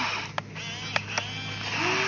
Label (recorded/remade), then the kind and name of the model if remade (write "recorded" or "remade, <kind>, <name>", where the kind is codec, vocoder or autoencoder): recorded